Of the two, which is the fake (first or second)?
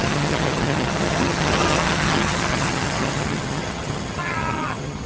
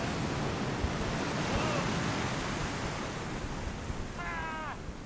first